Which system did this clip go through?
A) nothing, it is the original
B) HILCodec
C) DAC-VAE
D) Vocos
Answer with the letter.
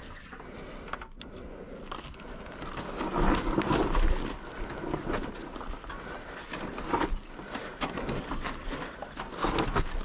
A